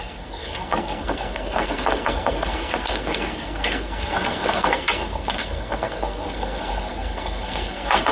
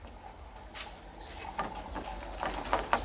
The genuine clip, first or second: second